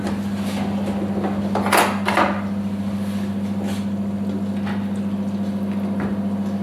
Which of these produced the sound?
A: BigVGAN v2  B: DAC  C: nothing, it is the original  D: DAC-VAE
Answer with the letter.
C